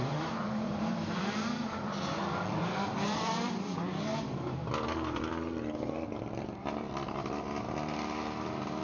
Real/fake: fake